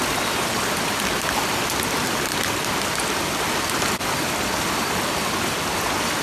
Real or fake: real